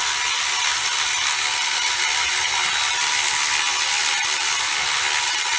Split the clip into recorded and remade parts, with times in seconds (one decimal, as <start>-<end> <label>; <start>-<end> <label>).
0.0-5.6 recorded